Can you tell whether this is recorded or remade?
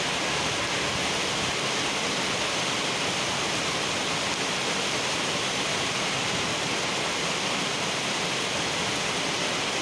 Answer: recorded